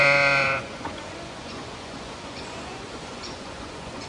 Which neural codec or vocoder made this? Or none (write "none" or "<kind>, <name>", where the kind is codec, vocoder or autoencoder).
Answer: vocoder, Vocos